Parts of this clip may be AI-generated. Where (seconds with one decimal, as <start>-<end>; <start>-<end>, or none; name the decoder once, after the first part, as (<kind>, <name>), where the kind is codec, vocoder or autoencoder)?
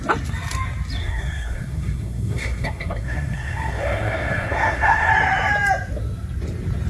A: 1.0-5.1 (codec, SNAC)